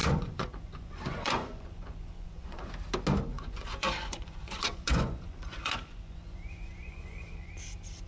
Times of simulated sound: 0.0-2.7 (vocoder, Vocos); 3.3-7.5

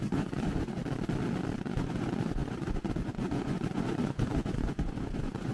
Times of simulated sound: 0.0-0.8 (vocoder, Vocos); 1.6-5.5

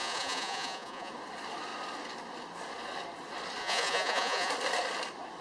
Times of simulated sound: 0.0-1.1 (vocoder, Vocos); 3.6-4.5

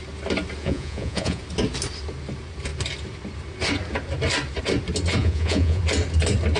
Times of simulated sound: 0.6-1.4 (vocoder, Vocos); 5.2-5.8